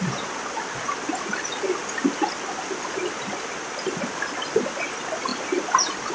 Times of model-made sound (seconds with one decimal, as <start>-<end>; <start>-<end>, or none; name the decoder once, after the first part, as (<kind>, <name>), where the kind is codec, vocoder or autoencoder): none